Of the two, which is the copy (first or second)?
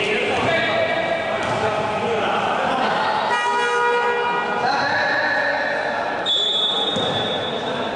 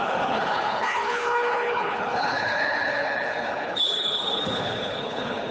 second